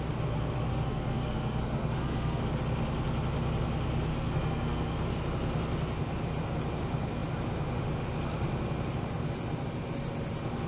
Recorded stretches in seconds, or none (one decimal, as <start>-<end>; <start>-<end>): 0.0-0.7; 2.4-4.1; 5.1-10.7